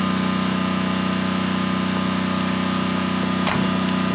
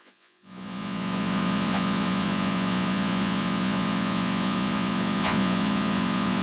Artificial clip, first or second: second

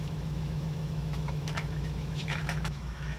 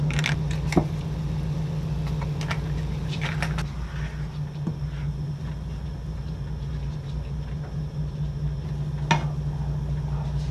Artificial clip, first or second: first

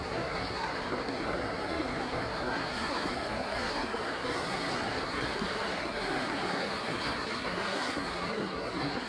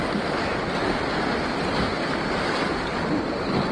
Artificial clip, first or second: first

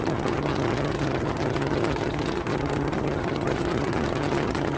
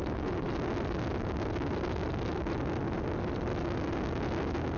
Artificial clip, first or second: first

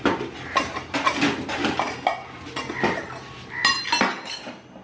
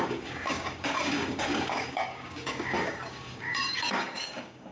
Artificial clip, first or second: second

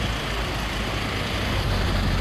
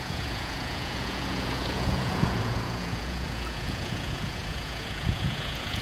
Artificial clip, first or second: second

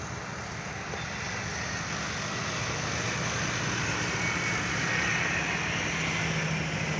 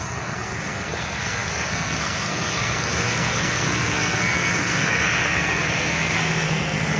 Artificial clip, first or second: second